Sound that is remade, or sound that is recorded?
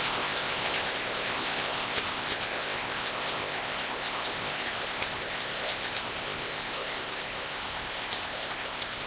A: remade